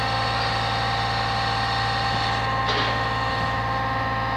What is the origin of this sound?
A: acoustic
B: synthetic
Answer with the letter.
A